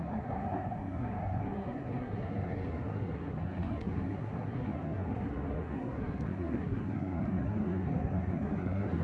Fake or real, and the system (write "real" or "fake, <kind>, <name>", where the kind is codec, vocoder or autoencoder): fake, codec, SNAC